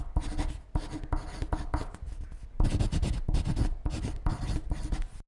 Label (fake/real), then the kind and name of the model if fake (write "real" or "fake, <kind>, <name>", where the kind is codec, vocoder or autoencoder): real